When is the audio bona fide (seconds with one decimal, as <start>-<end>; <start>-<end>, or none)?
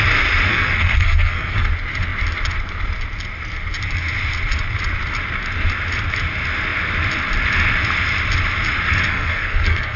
0.0-0.5; 1.7-9.1